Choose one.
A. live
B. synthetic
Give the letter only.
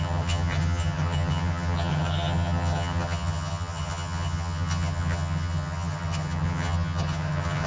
B